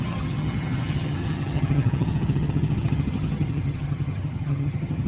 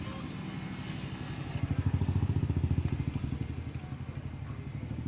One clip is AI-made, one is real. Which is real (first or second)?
second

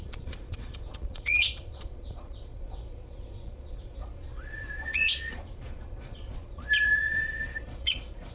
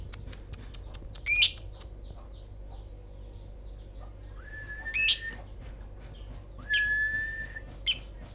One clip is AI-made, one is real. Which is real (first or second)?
second